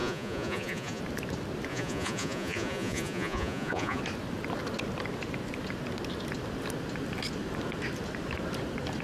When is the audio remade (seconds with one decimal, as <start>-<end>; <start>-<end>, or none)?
0.0-1.0; 1.7-4.0